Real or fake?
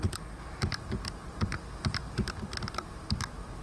real